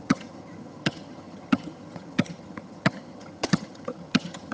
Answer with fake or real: fake